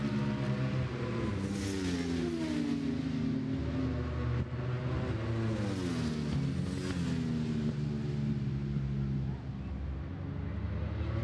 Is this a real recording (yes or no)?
yes